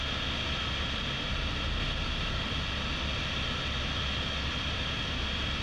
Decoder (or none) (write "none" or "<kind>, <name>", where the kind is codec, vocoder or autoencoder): none